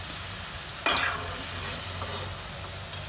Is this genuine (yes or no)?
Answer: yes